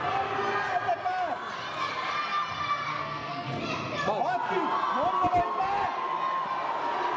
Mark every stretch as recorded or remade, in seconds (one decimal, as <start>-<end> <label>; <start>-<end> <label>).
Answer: 0.0-2.9 recorded; 2.9-3.6 remade; 3.6-7.2 recorded